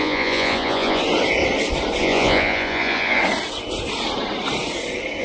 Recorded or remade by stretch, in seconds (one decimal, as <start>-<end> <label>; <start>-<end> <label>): 0.0-1.0 remade; 1.0-2.0 recorded; 2.0-3.2 remade; 3.2-5.2 recorded